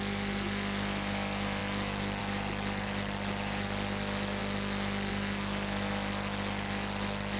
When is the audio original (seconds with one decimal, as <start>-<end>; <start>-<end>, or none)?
0.0-7.4